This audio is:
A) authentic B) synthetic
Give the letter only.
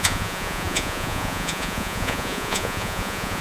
B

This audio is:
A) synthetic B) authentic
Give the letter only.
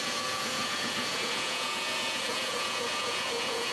A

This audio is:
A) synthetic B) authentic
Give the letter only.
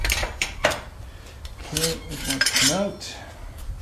B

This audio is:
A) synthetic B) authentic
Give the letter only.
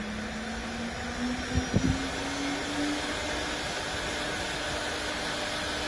B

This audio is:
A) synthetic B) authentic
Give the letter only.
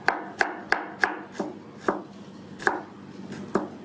B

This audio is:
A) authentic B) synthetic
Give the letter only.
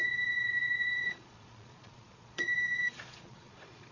B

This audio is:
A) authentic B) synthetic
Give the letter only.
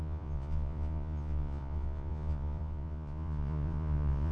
B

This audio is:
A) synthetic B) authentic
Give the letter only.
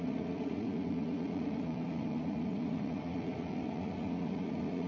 A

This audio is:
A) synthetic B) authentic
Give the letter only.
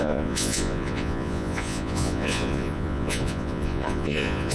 A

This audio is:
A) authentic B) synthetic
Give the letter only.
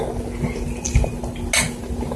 A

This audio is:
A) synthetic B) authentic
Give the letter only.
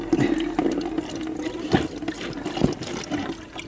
B